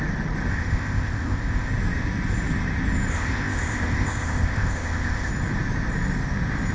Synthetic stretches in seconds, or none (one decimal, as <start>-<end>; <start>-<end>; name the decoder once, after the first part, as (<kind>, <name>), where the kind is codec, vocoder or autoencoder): 0.5-1.7 (codec, ZipCodec); 3.1-5.3